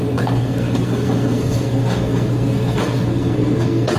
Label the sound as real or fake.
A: fake